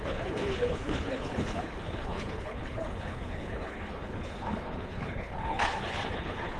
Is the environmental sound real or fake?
fake